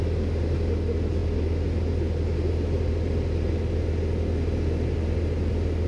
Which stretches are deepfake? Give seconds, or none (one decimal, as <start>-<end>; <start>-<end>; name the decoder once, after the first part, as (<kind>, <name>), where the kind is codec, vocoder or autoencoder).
none